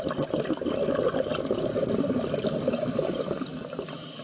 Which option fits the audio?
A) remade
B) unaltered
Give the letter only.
B